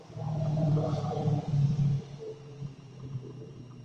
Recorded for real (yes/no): no